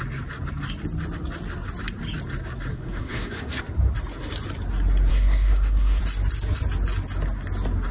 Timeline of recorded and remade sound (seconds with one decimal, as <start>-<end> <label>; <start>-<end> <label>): 0.0-2.7 recorded; 2.7-3.6 remade; 3.6-5.1 recorded; 5.1-6.0 remade; 6.0-7.9 recorded